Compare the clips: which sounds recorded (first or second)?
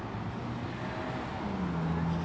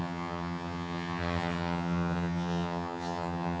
first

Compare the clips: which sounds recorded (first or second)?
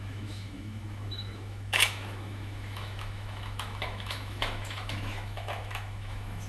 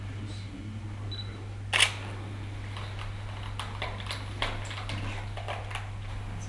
second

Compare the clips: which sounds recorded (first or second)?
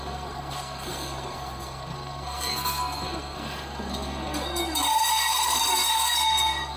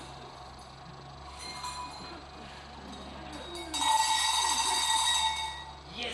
second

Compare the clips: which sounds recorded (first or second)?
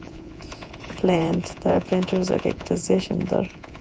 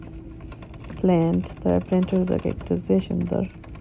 second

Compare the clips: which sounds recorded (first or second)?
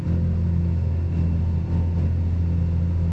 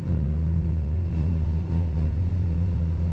first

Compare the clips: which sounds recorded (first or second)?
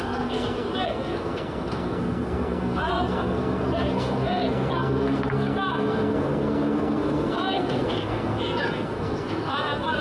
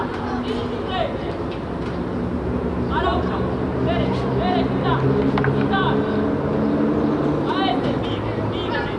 second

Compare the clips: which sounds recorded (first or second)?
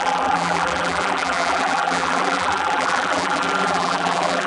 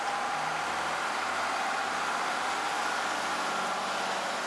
second